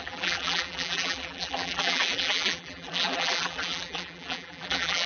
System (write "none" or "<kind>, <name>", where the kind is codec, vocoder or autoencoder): vocoder, BigVGAN v2